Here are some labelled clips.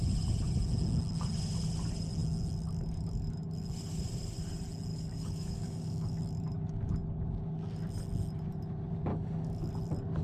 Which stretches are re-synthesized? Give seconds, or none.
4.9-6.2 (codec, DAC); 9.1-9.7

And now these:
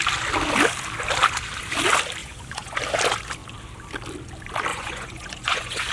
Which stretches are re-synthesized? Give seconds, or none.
2.2-2.8 (vocoder, Vocos); 4.7-5.9

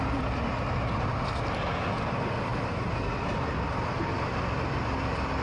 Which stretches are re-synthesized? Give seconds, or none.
2.5-4.4 (vocoder, BigVGAN v2)

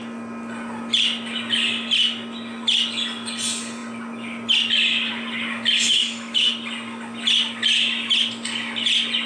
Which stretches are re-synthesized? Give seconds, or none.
5.9-6.5 (autoencoder, DAC-VAE)

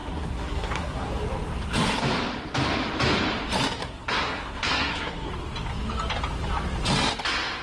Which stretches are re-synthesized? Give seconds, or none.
0.0-1.1 (codec, SNAC); 3.8-5.3

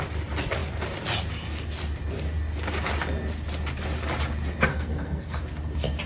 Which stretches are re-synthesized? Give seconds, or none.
4.7-5.4 (codec, SNAC)

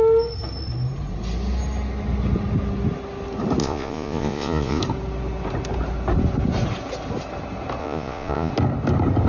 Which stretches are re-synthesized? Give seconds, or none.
3.6-4.8 (vocoder, Vocos); 7.8-8.5

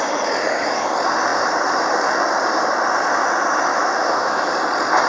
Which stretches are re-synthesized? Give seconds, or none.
3.7-4.5 (autoencoder, DAC-VAE)